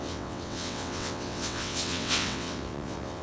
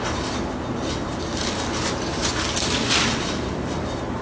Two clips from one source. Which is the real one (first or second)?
second